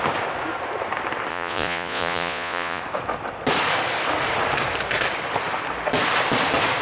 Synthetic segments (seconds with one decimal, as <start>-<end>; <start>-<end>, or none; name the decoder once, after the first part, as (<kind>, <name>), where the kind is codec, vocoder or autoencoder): 1.3-2.8 (vocoder, Vocos)